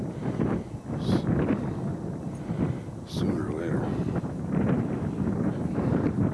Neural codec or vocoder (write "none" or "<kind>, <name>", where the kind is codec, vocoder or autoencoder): none